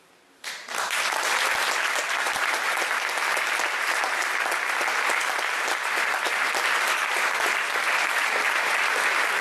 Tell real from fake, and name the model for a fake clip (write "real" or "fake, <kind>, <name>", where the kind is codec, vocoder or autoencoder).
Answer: fake, vocoder, BigVGAN v2